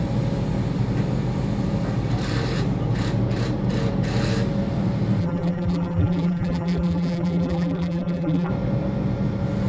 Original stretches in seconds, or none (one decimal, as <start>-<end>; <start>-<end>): 0.0-5.2; 8.5-9.7